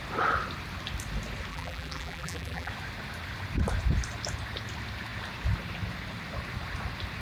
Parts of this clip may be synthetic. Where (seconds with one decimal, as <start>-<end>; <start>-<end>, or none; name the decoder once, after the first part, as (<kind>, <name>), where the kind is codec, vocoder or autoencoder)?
1.5-2.7 (vocoder, BigVGAN v2)